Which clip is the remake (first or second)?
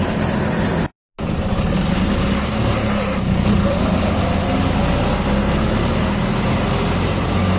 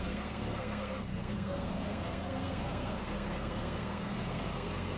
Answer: second